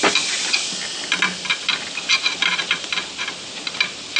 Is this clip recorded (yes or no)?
yes